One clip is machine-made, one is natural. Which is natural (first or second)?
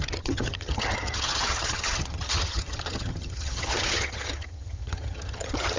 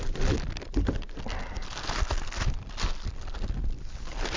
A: second